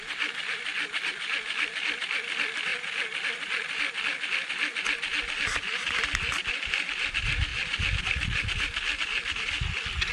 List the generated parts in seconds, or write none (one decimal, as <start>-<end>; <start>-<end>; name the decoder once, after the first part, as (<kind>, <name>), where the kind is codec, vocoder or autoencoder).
none